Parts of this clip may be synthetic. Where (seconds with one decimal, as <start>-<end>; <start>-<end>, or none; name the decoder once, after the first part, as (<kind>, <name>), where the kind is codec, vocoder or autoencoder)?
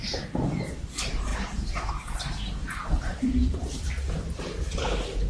2.6-4.2 (vocoder, BigVGAN v2)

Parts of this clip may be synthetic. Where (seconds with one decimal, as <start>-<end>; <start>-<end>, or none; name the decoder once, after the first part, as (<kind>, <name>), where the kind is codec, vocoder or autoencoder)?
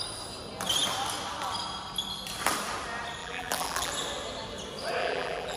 3.2-3.9 (vocoder, BigVGAN v2); 5.0-5.6